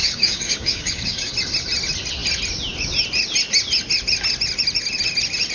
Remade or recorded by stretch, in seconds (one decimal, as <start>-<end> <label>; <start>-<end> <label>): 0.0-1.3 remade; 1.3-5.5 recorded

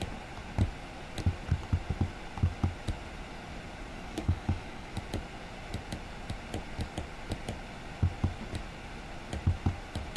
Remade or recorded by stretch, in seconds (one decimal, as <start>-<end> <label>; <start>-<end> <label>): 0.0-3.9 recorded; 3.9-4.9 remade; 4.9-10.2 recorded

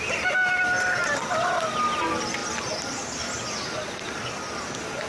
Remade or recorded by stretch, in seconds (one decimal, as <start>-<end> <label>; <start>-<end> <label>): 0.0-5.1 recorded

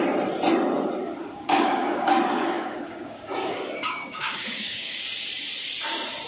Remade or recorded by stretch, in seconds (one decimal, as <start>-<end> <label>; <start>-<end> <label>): 0.0-1.2 recorded; 1.2-5.0 remade; 5.0-6.3 recorded

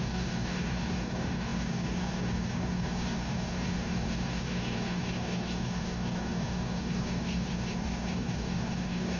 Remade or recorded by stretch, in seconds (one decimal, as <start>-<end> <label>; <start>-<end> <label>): 0.0-9.2 remade